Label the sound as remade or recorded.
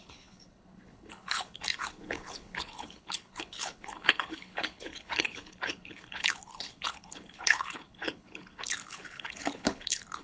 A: remade